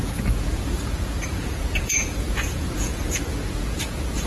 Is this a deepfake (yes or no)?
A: yes